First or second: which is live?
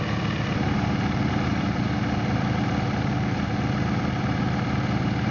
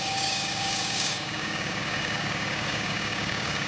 first